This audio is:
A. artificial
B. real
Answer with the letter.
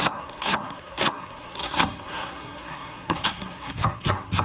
A